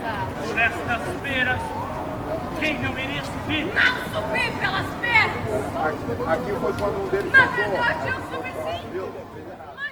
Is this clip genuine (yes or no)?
yes